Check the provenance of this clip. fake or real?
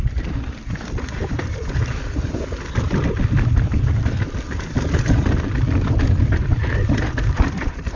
fake